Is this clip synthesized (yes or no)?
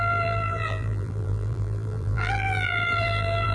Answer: yes